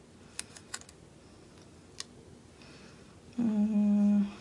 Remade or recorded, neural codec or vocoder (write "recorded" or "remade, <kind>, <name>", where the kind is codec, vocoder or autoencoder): recorded